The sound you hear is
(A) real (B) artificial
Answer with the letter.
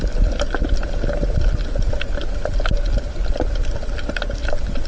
A